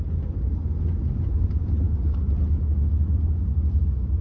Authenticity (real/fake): real